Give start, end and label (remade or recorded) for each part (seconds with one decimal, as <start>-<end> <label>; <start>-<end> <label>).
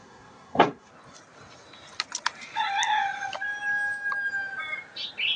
0.0-0.9 remade; 0.9-5.4 recorded